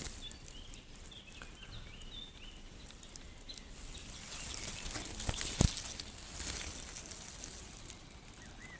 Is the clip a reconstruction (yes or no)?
no